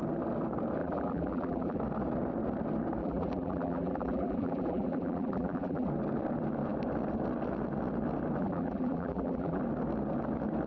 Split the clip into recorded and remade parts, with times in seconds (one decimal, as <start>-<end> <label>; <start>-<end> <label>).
0.0-0.8 recorded; 0.8-1.8 remade; 1.8-3.0 recorded; 3.0-5.9 remade; 5.9-8.4 recorded; 8.4-9.6 remade; 9.6-10.7 recorded